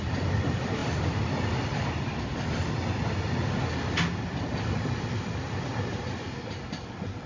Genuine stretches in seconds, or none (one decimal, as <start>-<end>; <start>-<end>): 0.0-7.3